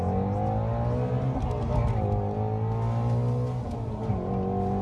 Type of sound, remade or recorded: recorded